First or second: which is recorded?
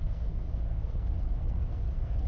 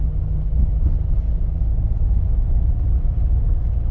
second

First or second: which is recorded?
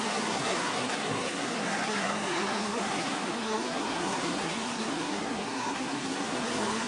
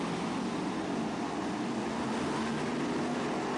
second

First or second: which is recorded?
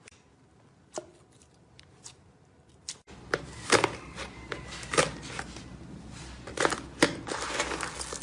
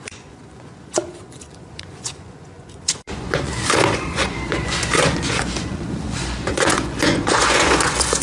first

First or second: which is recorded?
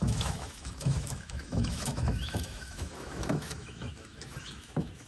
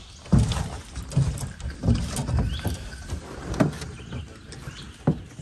second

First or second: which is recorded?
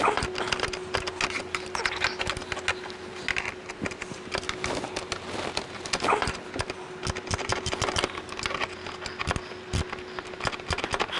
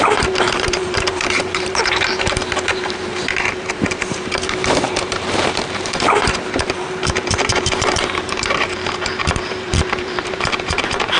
first